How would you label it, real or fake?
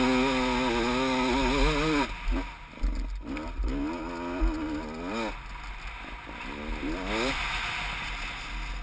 real